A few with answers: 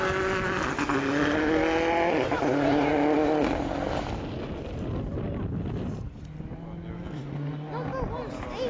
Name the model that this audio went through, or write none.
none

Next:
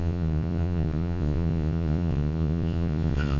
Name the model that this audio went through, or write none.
vocoder, Vocos